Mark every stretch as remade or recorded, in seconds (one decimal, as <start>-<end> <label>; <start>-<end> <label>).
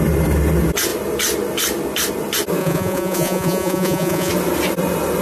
0.0-2.6 recorded; 2.6-4.3 remade; 4.3-5.2 recorded